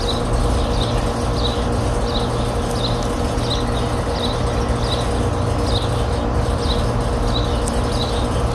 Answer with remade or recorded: recorded